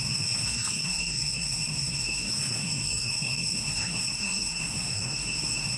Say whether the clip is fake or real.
fake